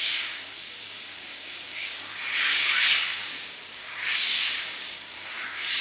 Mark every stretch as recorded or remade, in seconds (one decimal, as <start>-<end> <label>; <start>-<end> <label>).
0.0-5.8 remade